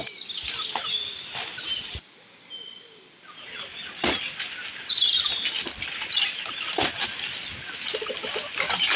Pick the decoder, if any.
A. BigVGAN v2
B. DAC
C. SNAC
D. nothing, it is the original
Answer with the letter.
D